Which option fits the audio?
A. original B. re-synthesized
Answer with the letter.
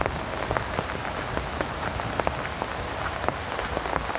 A